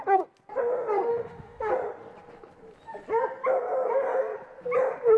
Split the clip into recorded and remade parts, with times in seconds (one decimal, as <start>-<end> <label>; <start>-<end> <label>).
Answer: 0.0-1.1 recorded; 1.1-1.7 remade; 1.7-5.2 recorded